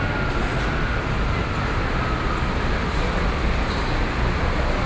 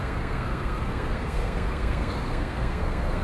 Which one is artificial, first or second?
second